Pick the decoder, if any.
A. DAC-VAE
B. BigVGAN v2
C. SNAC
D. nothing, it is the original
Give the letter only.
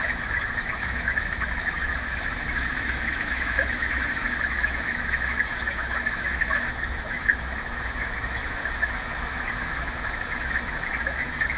A